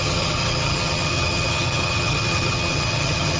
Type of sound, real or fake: fake